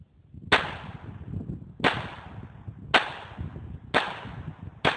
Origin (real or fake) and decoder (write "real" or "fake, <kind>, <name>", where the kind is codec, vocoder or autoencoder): real